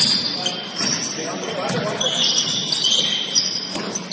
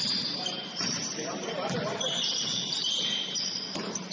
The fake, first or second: second